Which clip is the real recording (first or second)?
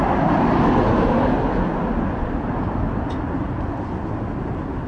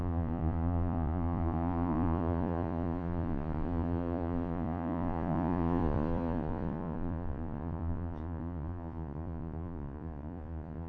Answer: first